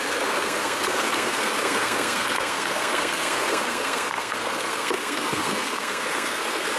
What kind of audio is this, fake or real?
fake